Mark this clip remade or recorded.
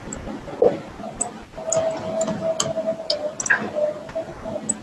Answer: recorded